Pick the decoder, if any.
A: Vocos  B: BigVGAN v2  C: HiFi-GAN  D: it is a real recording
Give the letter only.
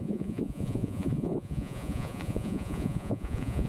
A